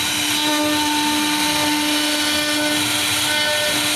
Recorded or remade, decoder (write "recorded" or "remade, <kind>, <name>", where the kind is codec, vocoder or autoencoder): recorded